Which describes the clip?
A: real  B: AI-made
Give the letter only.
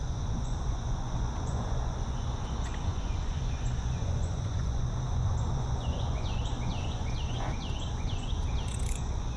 B